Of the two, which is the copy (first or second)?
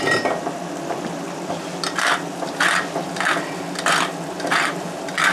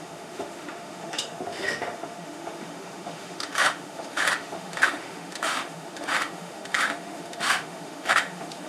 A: second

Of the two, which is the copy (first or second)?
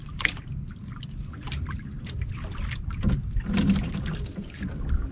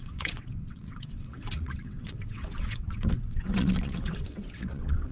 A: second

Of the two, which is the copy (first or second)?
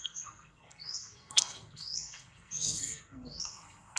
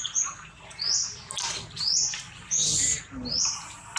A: first